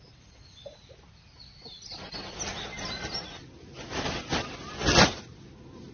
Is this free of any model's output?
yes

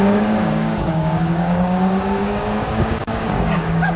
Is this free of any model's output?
no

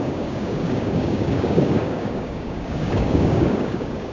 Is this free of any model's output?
no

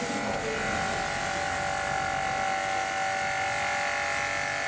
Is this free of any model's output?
yes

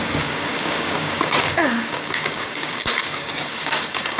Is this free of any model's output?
no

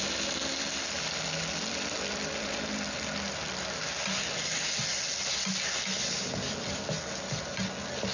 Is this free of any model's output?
yes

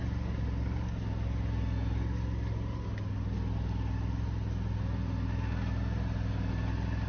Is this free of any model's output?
yes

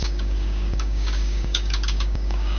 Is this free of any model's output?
no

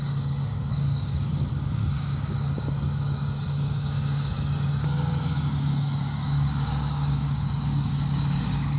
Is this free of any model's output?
no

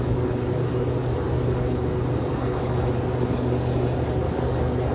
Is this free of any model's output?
no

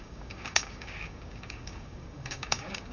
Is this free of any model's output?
no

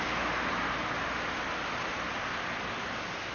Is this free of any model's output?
yes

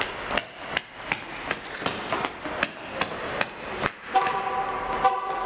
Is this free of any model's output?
yes